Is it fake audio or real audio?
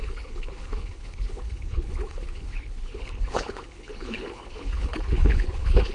fake